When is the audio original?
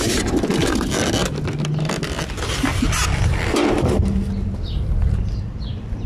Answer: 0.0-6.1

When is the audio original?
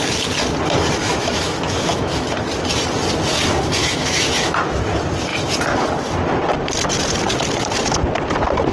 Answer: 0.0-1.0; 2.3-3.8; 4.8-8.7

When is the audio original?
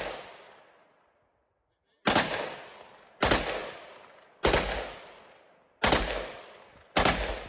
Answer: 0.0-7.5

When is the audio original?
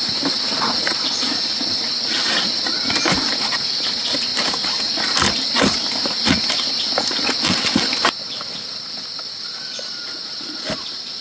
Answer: 0.0-11.2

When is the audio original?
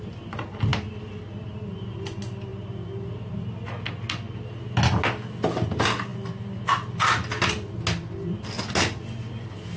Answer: 0.0-9.8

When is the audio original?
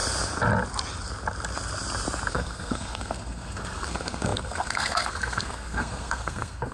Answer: 0.0-2.3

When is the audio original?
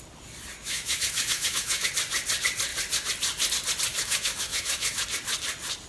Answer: 0.0-0.6; 1.9-3.9; 5.0-5.9